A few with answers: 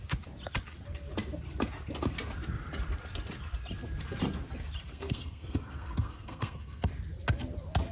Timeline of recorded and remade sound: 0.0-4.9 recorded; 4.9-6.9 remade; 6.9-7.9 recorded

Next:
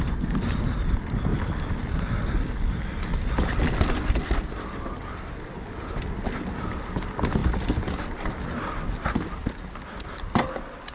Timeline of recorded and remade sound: 0.0-10.9 recorded

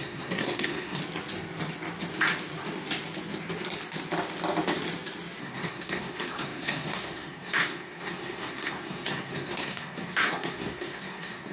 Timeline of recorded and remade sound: 0.0-1.0 remade; 1.0-5.4 recorded; 5.4-11.5 remade

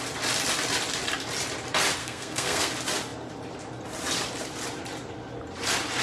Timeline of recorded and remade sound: 0.0-2.0 recorded; 2.0-2.7 remade; 2.7-6.0 recorded

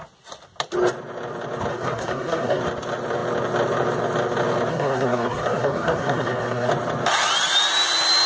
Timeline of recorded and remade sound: 0.0-1.7 recorded; 1.7-2.6 remade; 2.6-4.7 recorded; 4.7-6.7 remade; 6.7-8.3 recorded

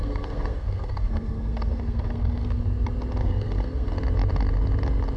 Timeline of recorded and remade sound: 0.0-2.6 remade; 2.6-3.2 recorded; 3.2-3.9 remade; 3.9-5.2 recorded

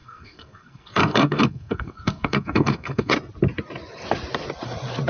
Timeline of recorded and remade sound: 0.0-3.1 remade; 3.1-5.1 recorded